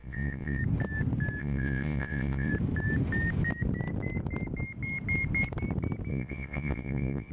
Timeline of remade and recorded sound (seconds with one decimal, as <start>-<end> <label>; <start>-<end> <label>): 0.0-0.6 remade; 0.6-1.4 recorded; 1.4-2.5 remade; 2.5-6.1 recorded; 6.1-7.3 remade